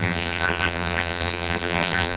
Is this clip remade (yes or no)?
yes